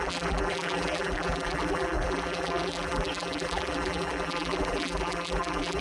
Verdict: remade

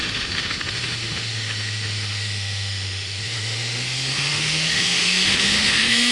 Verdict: remade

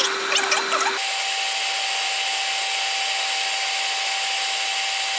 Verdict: recorded